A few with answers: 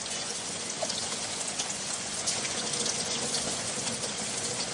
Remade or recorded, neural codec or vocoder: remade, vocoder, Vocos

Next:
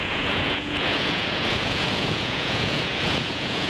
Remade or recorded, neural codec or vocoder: remade, vocoder, Vocos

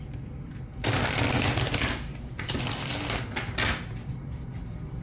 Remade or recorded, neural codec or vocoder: recorded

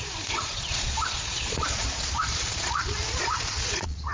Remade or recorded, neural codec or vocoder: remade, vocoder, Vocos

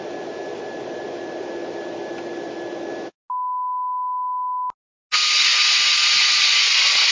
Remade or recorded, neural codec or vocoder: recorded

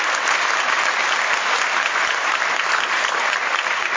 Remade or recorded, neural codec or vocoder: recorded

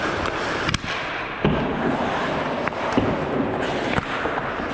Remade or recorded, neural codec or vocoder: recorded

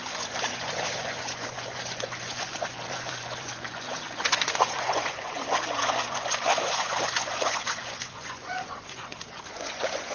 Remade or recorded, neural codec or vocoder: remade, vocoder, Vocos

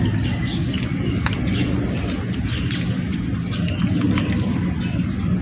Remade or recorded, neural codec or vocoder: recorded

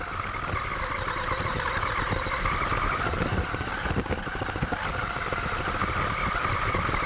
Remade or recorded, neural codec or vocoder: recorded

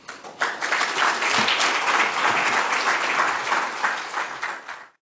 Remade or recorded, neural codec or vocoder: recorded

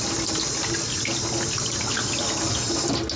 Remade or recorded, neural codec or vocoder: recorded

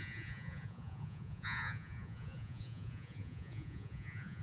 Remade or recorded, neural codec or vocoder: remade, vocoder, Vocos